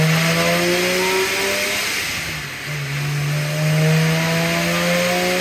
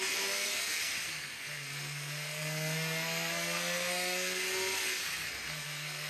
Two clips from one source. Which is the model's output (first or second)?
second